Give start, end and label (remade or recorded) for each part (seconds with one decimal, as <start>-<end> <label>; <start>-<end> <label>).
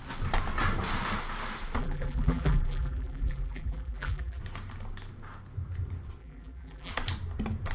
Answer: 0.0-1.8 recorded; 1.8-4.4 remade; 4.4-6.2 recorded; 6.2-6.9 remade; 6.9-7.7 recorded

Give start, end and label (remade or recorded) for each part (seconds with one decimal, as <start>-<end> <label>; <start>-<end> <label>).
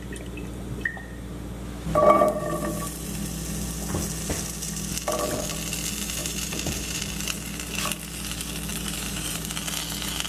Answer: 0.0-6.2 recorded; 6.2-7.0 remade; 7.0-8.7 recorded; 8.7-9.5 remade; 9.5-10.3 recorded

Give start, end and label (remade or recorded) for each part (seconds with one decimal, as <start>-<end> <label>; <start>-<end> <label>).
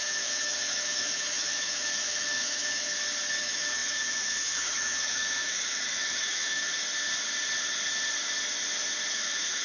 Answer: 0.0-2.9 remade; 2.9-3.4 recorded; 3.4-6.8 remade; 6.8-9.1 recorded; 9.1-9.6 remade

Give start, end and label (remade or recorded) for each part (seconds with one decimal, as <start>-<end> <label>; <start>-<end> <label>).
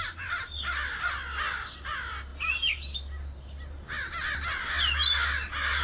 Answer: 0.0-5.8 recorded